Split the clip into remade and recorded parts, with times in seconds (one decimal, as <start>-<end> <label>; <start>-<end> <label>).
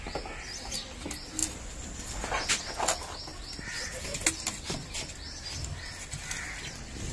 0.0-3.3 recorded; 3.3-4.0 remade; 4.0-7.1 recorded